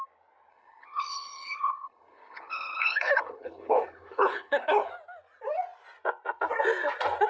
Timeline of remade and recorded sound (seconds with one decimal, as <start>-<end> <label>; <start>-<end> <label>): 0.0-0.5 recorded; 0.5-4.9 remade; 4.9-7.3 recorded